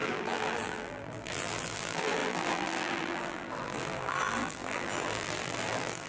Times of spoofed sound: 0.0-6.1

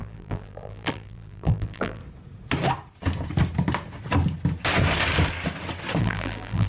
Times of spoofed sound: 0.0-2.0; 6.0-6.7

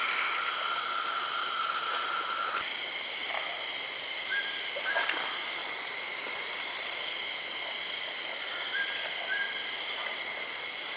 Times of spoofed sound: 5.6-7.4

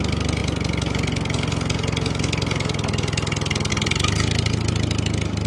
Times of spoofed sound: none

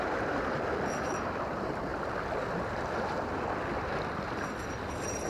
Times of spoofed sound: none